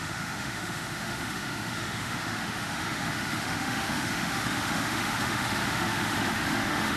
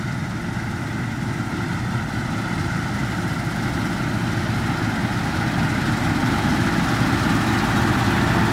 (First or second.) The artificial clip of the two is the first